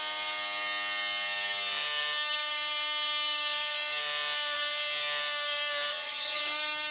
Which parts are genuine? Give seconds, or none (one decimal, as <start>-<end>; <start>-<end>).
0.0-5.9; 6.4-6.9